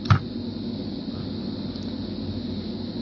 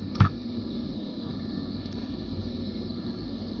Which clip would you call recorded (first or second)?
first